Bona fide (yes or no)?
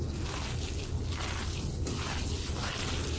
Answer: yes